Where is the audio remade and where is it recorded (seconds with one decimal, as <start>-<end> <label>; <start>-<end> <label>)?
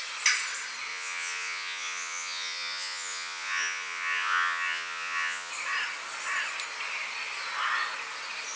0.0-0.9 recorded; 0.9-5.5 remade; 5.5-8.6 recorded